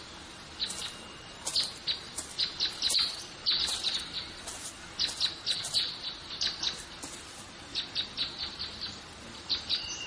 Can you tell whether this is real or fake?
real